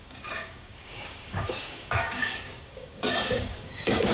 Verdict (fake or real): fake